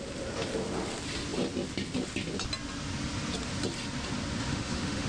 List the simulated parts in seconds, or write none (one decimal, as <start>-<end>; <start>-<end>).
4.5-5.1